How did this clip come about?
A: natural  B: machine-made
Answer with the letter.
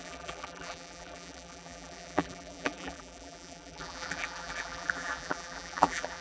B